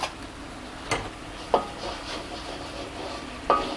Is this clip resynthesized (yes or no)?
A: no